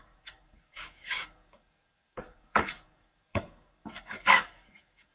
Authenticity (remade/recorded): remade